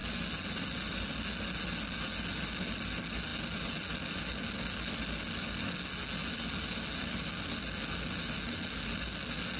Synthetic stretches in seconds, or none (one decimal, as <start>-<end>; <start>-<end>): none